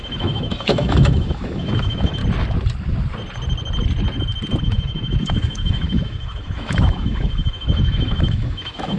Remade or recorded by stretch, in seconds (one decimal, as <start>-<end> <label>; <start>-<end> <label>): 0.0-2.2 remade; 2.2-4.6 recorded; 4.6-9.0 remade